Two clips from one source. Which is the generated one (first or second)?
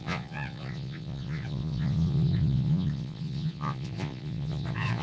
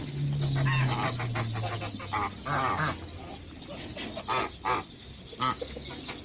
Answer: first